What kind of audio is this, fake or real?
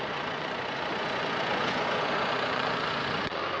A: fake